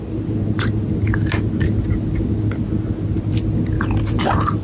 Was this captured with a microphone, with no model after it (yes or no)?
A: yes